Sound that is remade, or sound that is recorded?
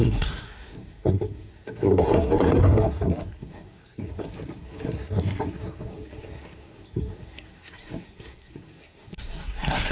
remade